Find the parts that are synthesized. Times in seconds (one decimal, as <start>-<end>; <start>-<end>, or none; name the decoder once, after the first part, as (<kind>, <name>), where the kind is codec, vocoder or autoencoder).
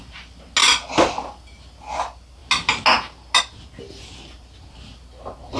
none